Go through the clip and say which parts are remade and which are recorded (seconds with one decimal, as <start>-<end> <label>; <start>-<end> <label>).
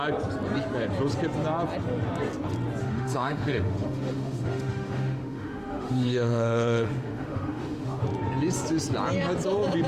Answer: 0.0-2.8 recorded; 2.8-8.0 remade; 8.0-9.9 recorded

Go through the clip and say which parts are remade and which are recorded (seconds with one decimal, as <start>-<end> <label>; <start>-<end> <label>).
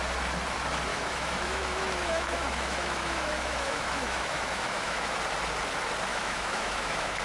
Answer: 0.0-0.9 recorded; 0.9-5.2 remade; 5.2-6.1 recorded; 6.1-7.2 remade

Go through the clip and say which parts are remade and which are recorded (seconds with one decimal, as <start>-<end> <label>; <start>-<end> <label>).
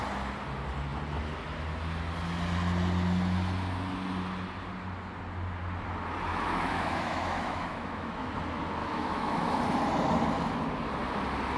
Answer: 0.0-6.3 recorded; 6.3-8.3 remade; 8.3-8.8 recorded; 8.8-9.6 remade; 9.6-11.6 recorded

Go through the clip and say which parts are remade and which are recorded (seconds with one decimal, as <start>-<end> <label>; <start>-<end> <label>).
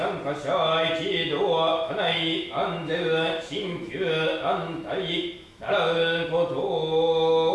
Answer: 0.0-1.7 recorded; 1.7-5.7 remade; 5.7-7.5 recorded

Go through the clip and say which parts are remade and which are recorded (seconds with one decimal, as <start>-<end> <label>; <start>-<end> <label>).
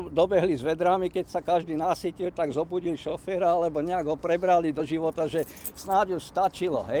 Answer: 0.0-3.1 recorded; 3.1-4.8 remade; 4.8-7.0 recorded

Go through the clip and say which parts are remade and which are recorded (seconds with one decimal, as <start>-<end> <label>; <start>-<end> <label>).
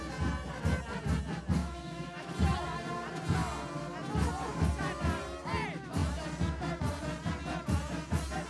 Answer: 0.0-1.6 recorded; 1.6-2.3 remade; 2.3-8.5 recorded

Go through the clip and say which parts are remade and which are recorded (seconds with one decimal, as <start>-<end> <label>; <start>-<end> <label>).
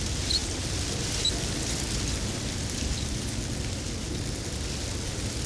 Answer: 0.0-5.5 recorded